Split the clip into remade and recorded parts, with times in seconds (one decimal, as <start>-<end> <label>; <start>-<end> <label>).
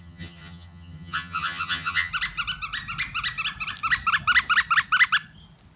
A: 0.0-2.1 remade; 2.1-5.8 recorded